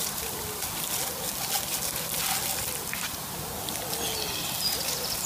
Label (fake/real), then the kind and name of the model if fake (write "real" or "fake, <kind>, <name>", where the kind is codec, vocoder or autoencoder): real